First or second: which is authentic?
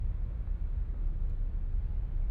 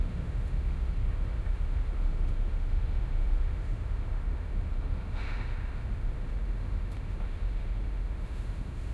first